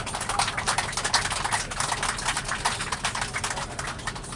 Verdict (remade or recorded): recorded